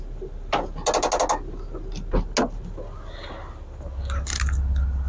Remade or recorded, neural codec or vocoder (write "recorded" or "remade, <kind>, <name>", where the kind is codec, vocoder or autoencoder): recorded